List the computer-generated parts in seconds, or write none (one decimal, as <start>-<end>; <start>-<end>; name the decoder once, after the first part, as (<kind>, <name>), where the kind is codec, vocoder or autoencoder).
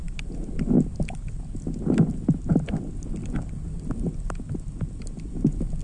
none